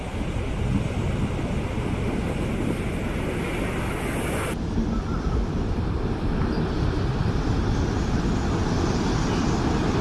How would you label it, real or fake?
real